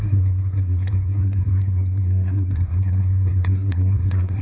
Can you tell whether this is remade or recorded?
remade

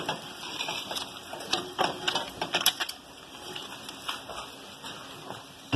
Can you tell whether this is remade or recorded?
remade